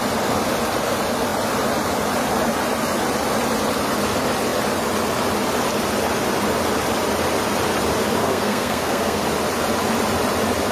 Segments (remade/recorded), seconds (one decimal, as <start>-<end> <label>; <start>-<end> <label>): 0.0-8.2 recorded; 8.2-9.2 remade; 9.2-10.7 recorded